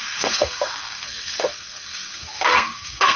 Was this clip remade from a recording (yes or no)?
yes